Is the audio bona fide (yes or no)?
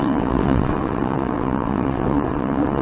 no